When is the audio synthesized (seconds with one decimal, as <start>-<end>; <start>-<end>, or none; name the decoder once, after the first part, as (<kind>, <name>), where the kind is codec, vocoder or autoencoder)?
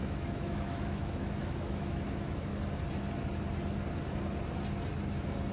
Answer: 0.0-2.5 (autoencoder, DAC-VAE)